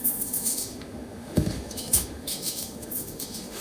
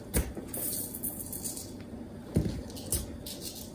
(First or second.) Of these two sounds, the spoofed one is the first